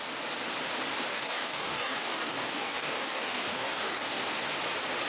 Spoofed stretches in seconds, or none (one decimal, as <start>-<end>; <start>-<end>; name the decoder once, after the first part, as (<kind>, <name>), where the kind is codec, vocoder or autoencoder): 1.1-4.2 (codec, DAC)

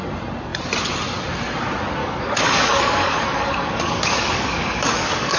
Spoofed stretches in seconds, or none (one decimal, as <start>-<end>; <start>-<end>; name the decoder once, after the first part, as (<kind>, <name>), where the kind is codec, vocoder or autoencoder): 2.0-5.4 (codec, DAC)

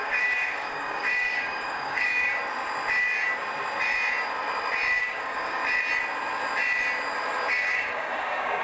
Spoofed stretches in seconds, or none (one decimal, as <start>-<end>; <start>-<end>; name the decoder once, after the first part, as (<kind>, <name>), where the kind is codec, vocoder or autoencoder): 0.0-2.4 (codec, DAC); 5.0-5.6; 7.5-8.6

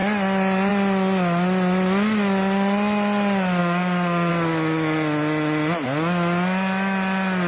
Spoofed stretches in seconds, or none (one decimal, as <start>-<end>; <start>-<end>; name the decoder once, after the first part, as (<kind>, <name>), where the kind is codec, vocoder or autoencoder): 3.6-4.3 (codec, DAC)

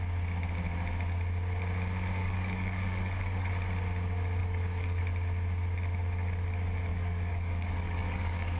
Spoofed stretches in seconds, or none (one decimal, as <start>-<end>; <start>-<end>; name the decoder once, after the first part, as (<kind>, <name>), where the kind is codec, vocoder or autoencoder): 2.2-3.5 (codec, DAC); 4.4-5.0; 6.9-8.6